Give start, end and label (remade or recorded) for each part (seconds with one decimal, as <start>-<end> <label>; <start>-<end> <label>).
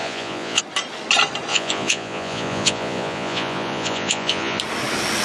0.0-0.6 remade; 0.6-1.5 recorded; 1.5-4.6 remade; 4.6-5.2 recorded